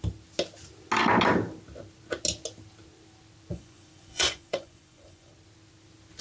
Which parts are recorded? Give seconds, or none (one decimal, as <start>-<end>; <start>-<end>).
0.0-3.5; 5.3-6.2